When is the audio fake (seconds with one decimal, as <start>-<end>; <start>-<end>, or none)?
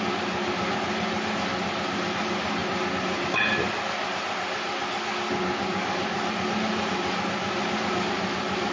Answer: 5.6-6.3